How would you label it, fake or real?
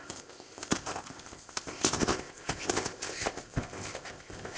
fake